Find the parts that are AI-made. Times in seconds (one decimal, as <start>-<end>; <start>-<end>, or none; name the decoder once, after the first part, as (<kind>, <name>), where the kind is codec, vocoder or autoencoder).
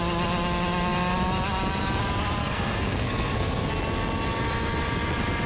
2.4-3.7 (codec, SNAC)